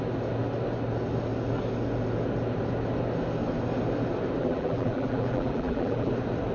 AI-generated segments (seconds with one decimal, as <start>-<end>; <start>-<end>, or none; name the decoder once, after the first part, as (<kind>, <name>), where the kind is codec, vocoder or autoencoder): 4.4-6.1 (vocoder, BigVGAN v2)